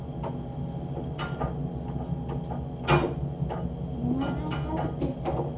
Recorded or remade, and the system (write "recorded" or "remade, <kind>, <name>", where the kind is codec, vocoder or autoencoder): recorded